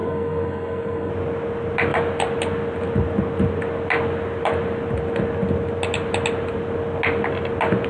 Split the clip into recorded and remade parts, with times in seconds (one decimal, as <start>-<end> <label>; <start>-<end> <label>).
0.0-1.1 remade; 1.1-7.9 recorded